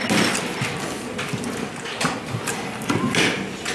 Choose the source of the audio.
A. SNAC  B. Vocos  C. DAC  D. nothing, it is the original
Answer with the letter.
D